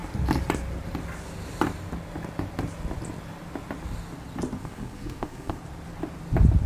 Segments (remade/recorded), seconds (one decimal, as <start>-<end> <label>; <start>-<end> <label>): 0.0-4.6 recorded; 4.6-5.6 remade; 5.6-6.7 recorded